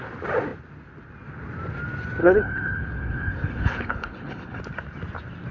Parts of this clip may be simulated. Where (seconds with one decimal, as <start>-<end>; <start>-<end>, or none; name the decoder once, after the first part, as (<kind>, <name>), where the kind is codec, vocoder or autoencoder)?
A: 2.2-4.6 (codec, HILCodec)